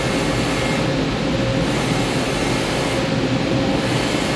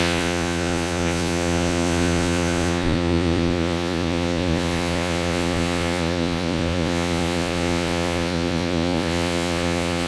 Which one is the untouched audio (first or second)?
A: first